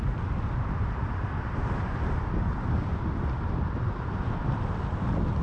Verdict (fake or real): real